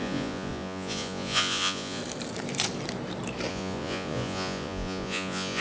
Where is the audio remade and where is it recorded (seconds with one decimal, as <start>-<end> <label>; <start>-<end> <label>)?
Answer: 0.0-2.0 remade; 2.0-3.5 recorded; 3.5-5.6 remade